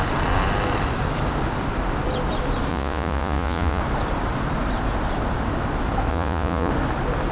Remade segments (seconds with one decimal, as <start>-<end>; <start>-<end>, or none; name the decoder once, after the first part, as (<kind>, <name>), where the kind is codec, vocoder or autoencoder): 2.7-3.8 (vocoder, Vocos); 6.1-6.7